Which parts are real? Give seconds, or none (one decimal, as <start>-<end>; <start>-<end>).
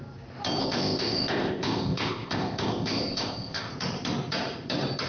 0.0-0.6; 3.7-5.1